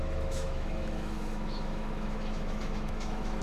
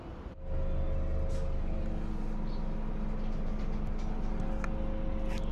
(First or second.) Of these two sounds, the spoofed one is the first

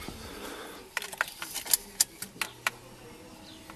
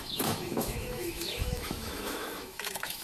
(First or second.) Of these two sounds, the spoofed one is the second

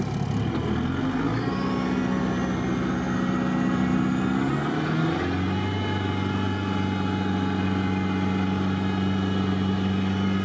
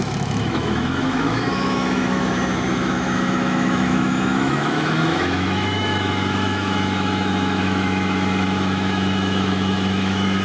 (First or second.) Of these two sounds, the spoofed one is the second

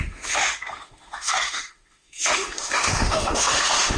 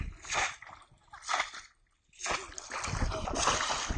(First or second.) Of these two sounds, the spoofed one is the first